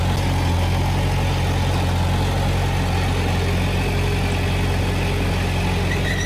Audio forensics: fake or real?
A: real